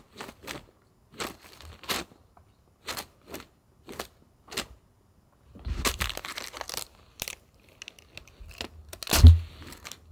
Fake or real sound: real